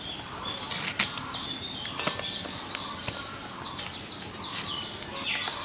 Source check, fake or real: real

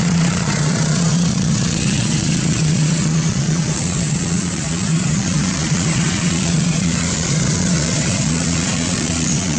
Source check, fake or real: fake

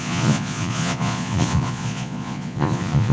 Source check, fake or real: fake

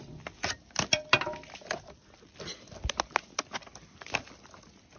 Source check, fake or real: real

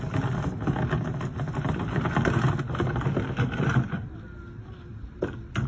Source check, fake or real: real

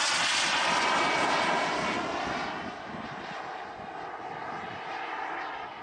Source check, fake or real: real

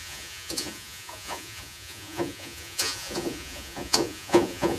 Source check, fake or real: fake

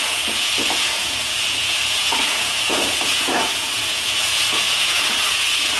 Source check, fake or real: fake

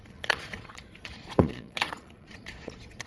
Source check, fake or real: fake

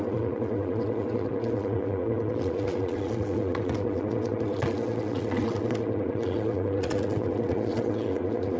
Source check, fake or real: fake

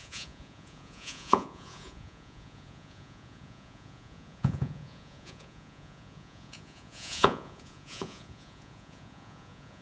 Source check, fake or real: fake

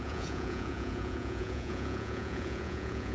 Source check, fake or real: fake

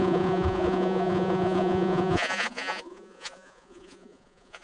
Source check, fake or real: fake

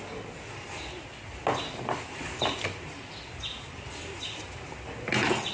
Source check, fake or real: real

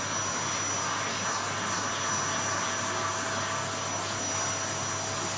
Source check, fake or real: real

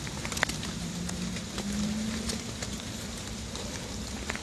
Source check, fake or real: real